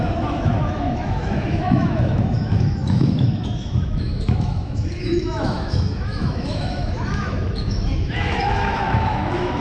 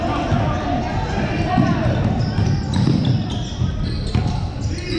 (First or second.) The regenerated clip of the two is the first